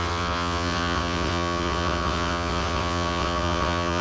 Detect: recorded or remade remade